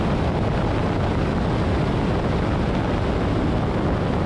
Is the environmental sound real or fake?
real